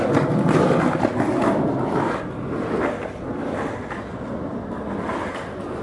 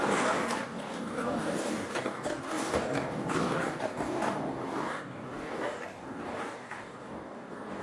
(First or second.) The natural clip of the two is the first